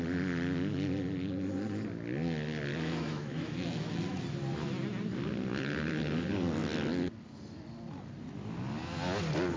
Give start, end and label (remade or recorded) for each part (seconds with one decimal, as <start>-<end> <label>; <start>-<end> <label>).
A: 0.0-2.7 recorded; 2.7-4.2 remade; 4.2-9.6 recorded